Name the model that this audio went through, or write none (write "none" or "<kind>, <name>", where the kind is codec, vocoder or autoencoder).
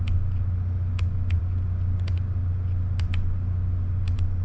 none